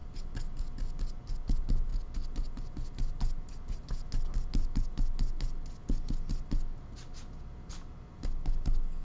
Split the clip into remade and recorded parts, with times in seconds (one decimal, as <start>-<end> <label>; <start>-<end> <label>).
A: 0.0-9.0 recorded